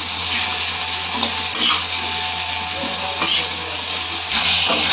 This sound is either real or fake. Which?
real